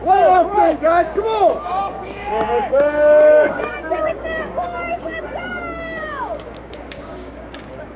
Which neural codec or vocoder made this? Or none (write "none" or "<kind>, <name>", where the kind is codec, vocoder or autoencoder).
codec, DAC